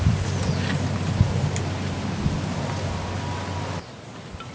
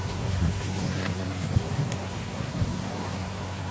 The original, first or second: first